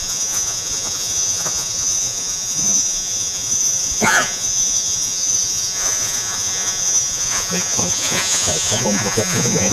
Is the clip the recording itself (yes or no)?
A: no